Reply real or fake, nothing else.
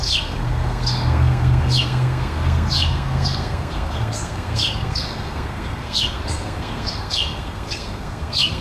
fake